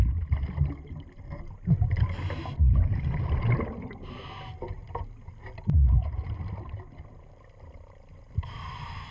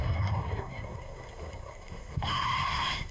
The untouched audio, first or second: first